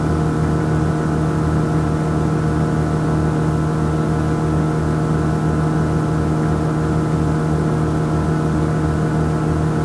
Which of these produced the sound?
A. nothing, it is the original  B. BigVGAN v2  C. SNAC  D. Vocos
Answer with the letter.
A